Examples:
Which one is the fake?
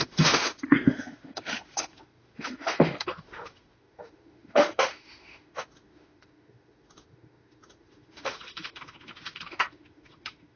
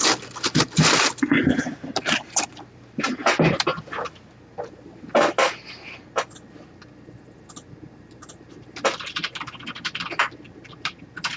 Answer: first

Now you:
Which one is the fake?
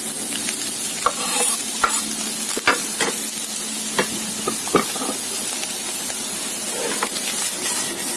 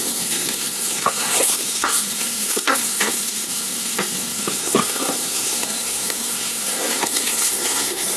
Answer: second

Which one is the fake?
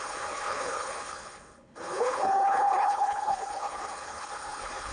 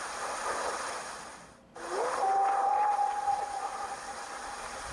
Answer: first